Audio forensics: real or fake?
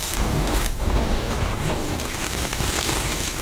fake